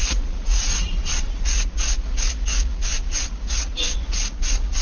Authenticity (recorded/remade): remade